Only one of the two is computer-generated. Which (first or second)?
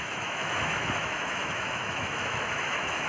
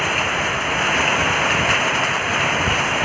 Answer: first